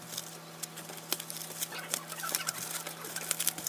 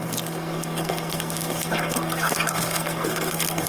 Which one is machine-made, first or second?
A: second